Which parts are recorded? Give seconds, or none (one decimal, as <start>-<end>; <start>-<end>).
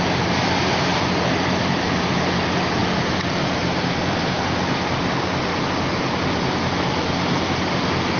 0.0-0.9; 2.1-2.8; 4.4-8.2